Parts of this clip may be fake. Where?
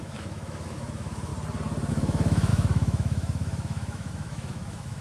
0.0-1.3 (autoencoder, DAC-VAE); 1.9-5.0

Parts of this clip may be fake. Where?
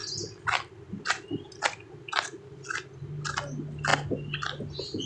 none